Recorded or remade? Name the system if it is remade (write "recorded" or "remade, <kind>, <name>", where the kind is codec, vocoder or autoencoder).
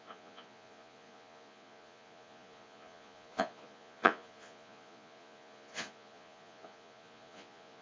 remade, vocoder, Vocos